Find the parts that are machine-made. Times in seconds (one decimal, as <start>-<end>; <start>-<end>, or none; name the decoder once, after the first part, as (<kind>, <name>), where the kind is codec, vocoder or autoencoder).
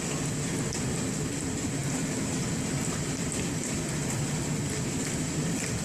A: 1.8-3.3 (vocoder, BigVGAN v2)